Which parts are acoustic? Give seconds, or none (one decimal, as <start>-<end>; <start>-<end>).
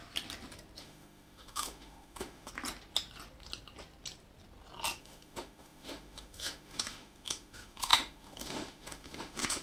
0.0-0.8; 2.5-5.0